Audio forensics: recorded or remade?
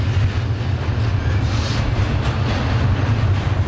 recorded